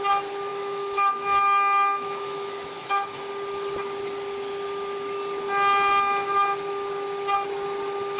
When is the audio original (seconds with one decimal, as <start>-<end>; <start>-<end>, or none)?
0.0-0.5; 3.2-8.2